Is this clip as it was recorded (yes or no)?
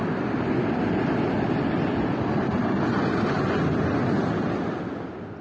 yes